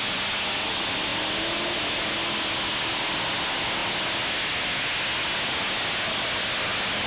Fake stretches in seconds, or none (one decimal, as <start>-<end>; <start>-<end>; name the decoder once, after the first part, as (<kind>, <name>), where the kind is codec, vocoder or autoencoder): none